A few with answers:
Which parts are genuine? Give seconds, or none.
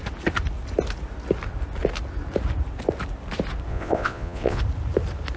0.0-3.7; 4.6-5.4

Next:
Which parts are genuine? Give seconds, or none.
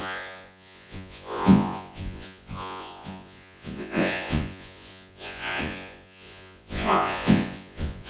none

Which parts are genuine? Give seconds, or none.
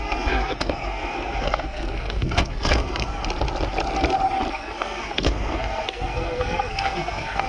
3.2-4.5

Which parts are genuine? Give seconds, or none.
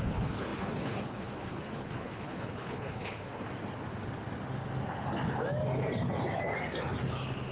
3.4-7.5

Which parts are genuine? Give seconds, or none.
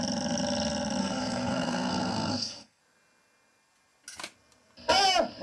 0.0-1.0; 2.8-5.4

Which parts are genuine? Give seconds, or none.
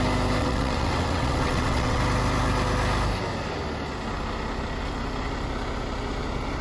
0.0-0.4; 2.0-6.6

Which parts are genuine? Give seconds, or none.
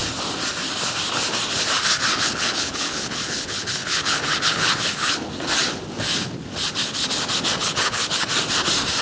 0.0-2.1; 5.3-7.6; 8.3-9.0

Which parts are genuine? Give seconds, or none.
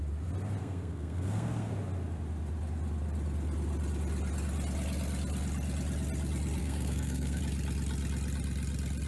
0.0-0.6; 1.7-6.6; 7.4-9.1